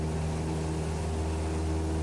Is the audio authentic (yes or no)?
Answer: yes